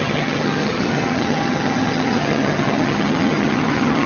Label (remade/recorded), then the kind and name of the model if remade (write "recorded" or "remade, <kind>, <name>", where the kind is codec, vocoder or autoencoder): remade, vocoder, HiFi-GAN